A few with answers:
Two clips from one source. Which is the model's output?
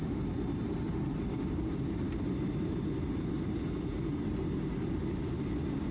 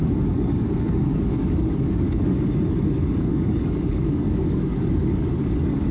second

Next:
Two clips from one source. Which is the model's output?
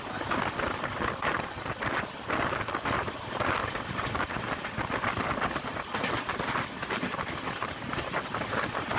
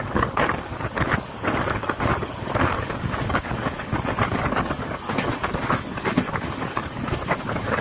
second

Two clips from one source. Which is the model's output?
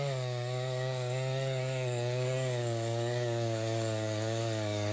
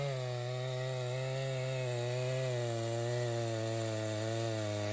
first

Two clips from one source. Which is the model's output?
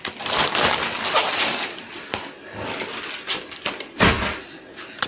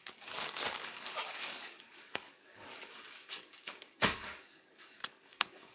second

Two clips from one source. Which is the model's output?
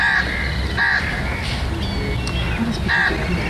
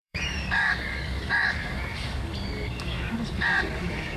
second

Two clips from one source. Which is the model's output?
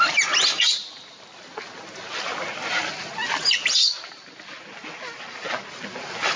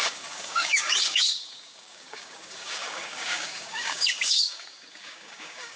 second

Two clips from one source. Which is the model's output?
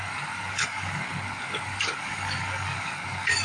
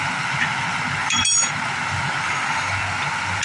first